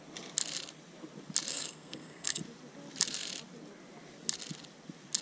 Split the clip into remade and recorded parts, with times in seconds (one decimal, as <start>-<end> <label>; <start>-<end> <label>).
0.0-1.5 recorded; 1.5-2.4 remade; 2.4-5.2 recorded